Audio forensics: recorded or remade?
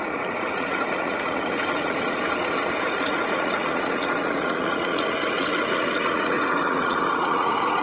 remade